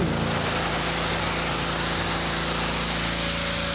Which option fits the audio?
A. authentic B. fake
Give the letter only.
A